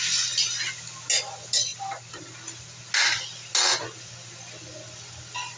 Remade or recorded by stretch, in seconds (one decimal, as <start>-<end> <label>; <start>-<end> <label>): 0.0-5.6 recorded